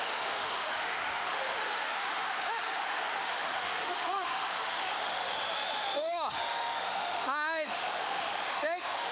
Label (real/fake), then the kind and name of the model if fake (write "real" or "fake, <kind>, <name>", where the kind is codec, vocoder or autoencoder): fake, autoencoder, DAC-VAE